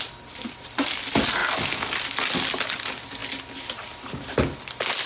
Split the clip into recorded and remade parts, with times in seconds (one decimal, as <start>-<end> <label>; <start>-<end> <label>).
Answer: 0.0-5.1 recorded